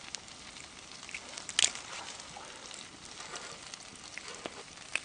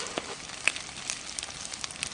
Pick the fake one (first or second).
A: second